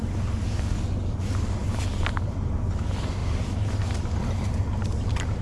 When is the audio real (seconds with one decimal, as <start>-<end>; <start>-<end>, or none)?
0.0-1.6; 2.7-3.2; 4.6-5.4